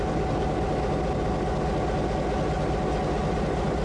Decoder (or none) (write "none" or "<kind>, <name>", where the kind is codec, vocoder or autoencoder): none